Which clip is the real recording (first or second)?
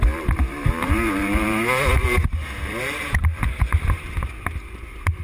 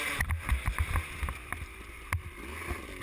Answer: second